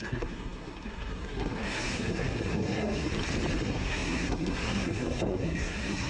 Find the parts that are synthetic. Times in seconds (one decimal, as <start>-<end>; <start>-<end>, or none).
0.0-3.1; 3.6-6.1